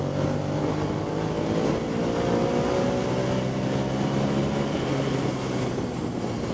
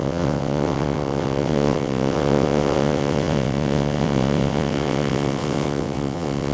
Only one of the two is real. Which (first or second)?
first